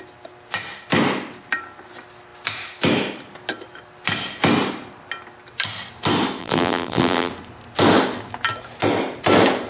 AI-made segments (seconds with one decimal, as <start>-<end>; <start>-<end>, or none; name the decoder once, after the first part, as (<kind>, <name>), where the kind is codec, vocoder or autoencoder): 6.4-7.3 (vocoder, BigVGAN v2)